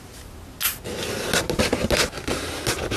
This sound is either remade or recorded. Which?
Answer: recorded